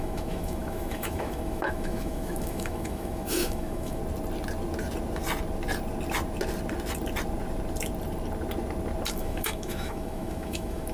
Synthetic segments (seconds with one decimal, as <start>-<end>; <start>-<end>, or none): 0.0-4.0; 9.1-10.9